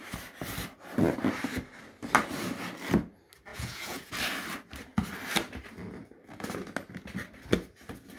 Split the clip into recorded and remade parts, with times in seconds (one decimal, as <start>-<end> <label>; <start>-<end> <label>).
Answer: 0.0-3.5 recorded; 3.5-4.1 remade; 4.1-8.2 recorded